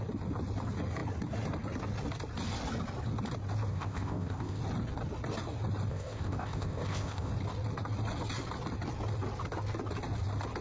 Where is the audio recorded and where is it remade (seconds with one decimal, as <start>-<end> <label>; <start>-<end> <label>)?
0.0-3.7 recorded; 3.7-4.6 remade; 4.6-5.9 recorded; 5.9-7.3 remade; 7.3-10.6 recorded